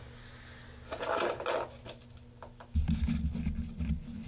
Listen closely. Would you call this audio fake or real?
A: real